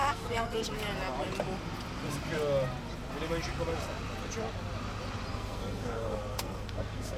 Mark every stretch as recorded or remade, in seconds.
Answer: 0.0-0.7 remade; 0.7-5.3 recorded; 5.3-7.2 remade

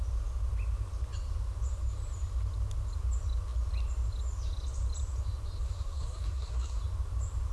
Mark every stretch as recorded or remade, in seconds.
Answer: 0.0-5.6 recorded; 5.6-6.8 remade; 6.8-7.5 recorded

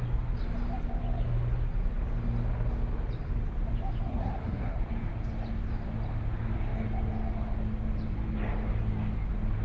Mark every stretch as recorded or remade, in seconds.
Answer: 0.0-4.1 recorded; 4.1-4.8 remade; 4.8-9.6 recorded

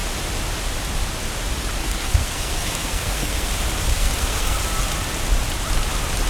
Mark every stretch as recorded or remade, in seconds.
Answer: 0.0-1.8 recorded; 1.8-3.5 remade; 3.5-3.9 recorded; 3.9-4.6 remade; 4.6-6.3 recorded

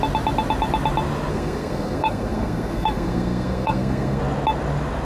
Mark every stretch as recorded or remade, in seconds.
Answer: 0.0-1.3 recorded; 1.3-4.2 remade; 4.2-5.0 recorded

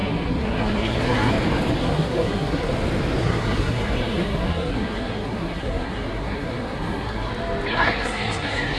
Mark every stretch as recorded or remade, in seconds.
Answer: 0.0-1.3 remade; 1.3-1.8 recorded; 1.8-2.7 remade; 2.7-3.2 recorded; 3.2-7.3 remade; 7.3-7.7 recorded; 7.7-8.8 remade